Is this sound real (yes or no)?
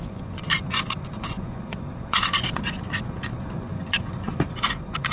no